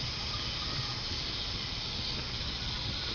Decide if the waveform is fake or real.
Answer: real